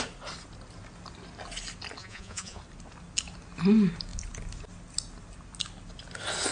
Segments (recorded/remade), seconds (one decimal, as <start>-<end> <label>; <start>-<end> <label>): 0.0-2.0 recorded; 2.0-2.6 remade; 2.6-6.5 recorded